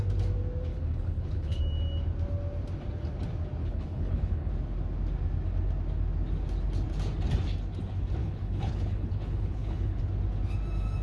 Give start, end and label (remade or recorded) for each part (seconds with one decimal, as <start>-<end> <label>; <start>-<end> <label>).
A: 0.0-0.7 recorded; 0.7-1.6 remade; 1.6-3.6 recorded; 3.6-4.5 remade; 4.5-8.2 recorded; 8.2-10.0 remade; 10.0-11.0 recorded